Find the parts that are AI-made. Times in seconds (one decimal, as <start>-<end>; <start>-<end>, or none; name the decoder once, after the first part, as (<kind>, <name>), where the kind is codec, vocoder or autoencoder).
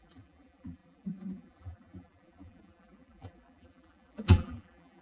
0.0-5.0 (vocoder, BigVGAN v2)